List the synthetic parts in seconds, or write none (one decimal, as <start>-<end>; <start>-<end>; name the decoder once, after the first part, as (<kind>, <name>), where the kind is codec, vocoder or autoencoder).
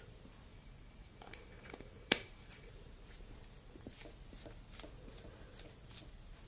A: 0.5-2.7 (vocoder, BigVGAN v2)